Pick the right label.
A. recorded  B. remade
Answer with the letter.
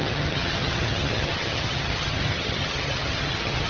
B